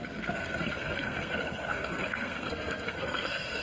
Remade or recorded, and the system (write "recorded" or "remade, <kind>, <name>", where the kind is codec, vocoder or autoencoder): remade, codec, SNAC